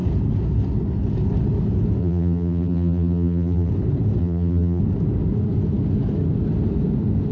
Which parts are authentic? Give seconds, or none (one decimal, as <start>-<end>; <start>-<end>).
0.0-2.0; 3.7-4.2; 4.8-7.3